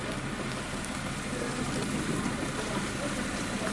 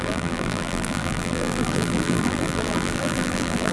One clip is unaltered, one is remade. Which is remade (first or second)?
second